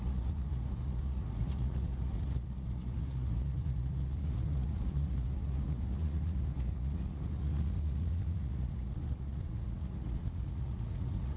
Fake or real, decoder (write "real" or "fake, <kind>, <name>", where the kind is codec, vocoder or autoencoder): fake, vocoder, Vocos